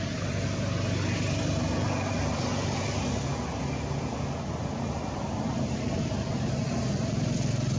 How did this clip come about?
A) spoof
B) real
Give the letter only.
B